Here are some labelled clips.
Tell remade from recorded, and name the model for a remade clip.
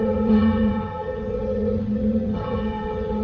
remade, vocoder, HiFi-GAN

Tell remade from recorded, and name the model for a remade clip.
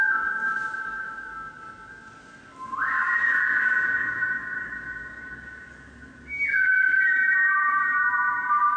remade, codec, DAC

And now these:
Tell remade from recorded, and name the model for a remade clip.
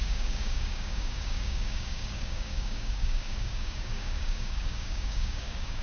remade, codec, DAC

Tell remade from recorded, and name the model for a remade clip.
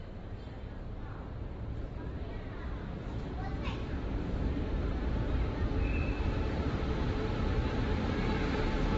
remade, vocoder, BigVGAN v2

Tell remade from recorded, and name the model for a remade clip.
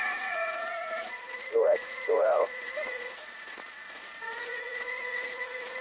remade, vocoder, Vocos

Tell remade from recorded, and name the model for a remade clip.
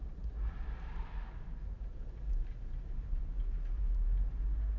remade, vocoder, BigVGAN v2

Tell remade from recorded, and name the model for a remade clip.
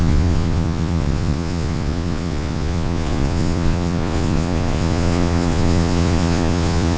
remade, vocoder, Vocos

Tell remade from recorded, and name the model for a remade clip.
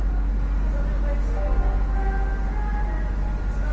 recorded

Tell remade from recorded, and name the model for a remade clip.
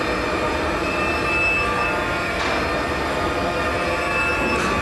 recorded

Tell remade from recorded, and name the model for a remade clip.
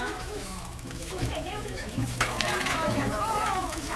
remade, autoencoder, DAC-VAE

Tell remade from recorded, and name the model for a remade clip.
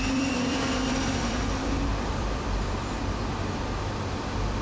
remade, vocoder, BigVGAN v2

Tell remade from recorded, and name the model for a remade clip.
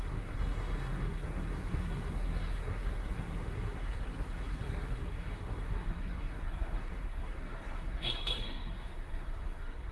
remade, codec, SNAC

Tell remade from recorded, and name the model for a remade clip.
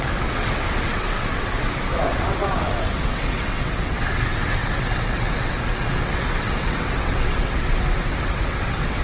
remade, vocoder, WaveNeXt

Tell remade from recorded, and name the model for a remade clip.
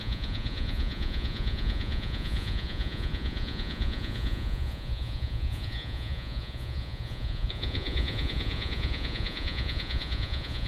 remade, vocoder, Vocos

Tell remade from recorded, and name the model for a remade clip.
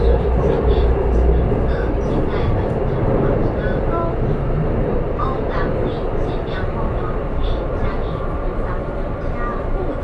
remade, vocoder, BigVGAN v2